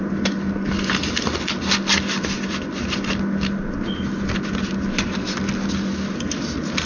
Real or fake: real